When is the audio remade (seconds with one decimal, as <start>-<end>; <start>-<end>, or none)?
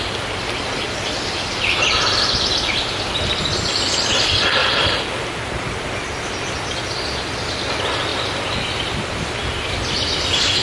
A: none